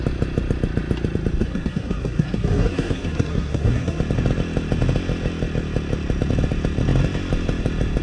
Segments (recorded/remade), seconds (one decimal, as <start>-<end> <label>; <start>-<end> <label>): 0.0-1.4 recorded; 1.4-4.0 remade; 4.0-8.0 recorded